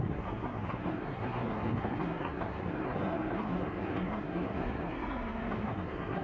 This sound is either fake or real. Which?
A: fake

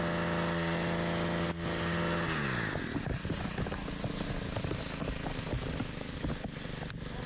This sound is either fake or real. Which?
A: real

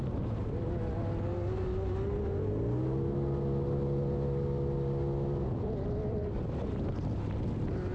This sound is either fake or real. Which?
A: real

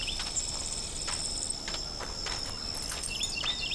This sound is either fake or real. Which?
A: real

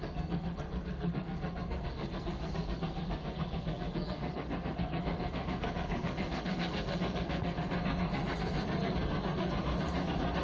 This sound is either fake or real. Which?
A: fake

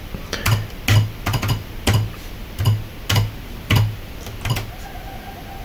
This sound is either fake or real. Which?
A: real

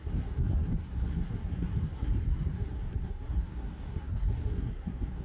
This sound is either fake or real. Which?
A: fake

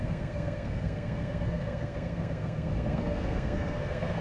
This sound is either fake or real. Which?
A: fake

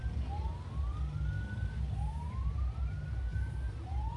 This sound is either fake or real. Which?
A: real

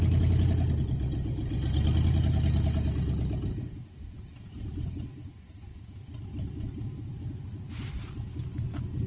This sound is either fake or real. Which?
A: real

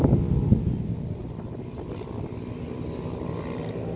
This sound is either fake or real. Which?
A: real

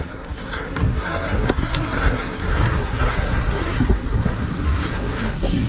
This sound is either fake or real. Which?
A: fake